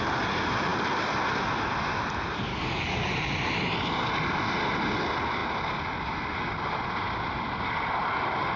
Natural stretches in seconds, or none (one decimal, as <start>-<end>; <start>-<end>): 0.0-2.5; 3.1-8.6